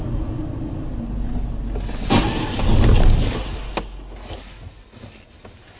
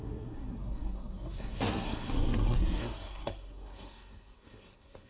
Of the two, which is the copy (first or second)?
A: second